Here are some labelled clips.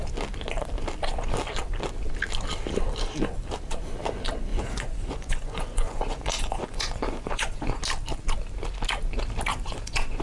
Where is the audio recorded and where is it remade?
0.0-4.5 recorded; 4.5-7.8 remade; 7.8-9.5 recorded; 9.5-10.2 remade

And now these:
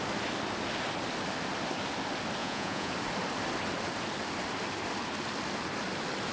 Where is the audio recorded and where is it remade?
0.0-2.4 recorded; 2.4-2.9 remade; 2.9-6.3 recorded

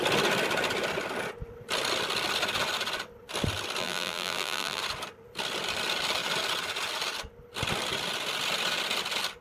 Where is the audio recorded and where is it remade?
0.0-3.8 recorded; 3.8-4.8 remade; 4.8-9.4 recorded

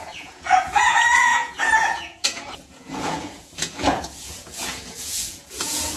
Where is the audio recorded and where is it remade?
0.0-6.0 remade

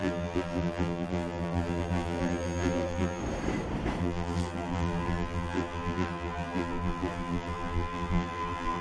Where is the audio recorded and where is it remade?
0.0-3.2 remade; 3.2-4.0 recorded; 4.0-8.8 remade

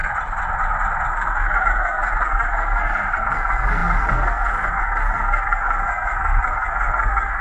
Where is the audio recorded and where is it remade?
0.0-1.1 recorded; 1.1-7.4 remade

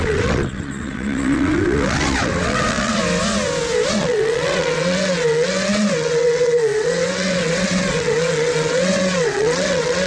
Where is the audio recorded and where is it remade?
0.0-3.0 remade; 3.0-3.9 recorded; 3.9-10.1 remade